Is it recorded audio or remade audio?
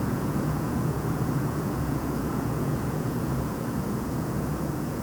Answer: remade